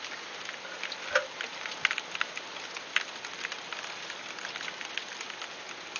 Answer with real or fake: real